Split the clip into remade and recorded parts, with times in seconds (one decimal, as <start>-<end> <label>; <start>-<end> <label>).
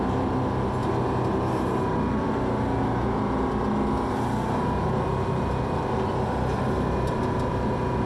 0.0-0.8 recorded; 0.8-1.8 remade; 1.8-8.1 recorded